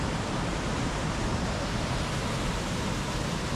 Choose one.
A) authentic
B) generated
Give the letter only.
A